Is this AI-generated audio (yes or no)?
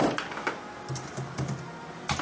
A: no